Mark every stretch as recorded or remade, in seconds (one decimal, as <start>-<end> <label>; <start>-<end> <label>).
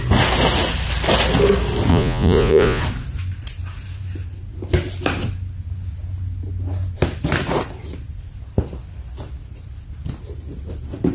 0.0-1.9 recorded; 1.9-2.8 remade; 2.8-11.1 recorded